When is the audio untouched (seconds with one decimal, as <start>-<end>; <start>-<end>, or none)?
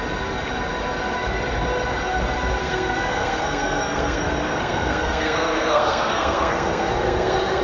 0.0-2.6